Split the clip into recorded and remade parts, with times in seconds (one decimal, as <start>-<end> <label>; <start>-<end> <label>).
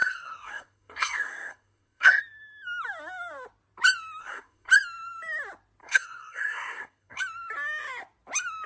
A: 0.0-2.2 remade; 2.2-4.2 recorded; 4.2-4.7 remade; 4.7-5.8 recorded; 5.8-7.2 remade; 7.2-8.7 recorded